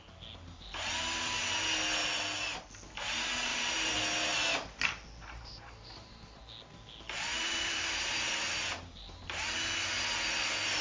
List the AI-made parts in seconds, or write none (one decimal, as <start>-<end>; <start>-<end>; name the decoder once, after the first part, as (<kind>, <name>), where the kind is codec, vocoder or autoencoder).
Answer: 3.5-4.0 (vocoder, BigVGAN v2); 5.2-6.4; 7.3-8.1